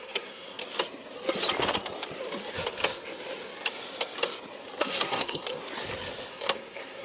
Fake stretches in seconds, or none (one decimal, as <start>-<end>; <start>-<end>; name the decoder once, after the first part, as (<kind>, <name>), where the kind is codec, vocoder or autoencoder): 0.0-0.6 (codec, SNAC); 4.8-5.6; 6.3-7.0